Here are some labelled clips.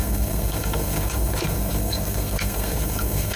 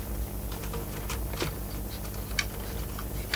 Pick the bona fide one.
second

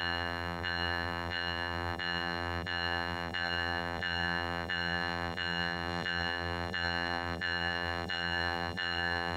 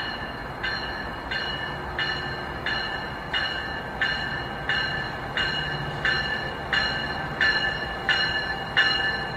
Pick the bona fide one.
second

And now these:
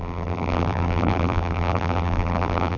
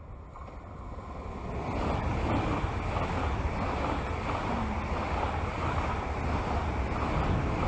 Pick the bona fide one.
second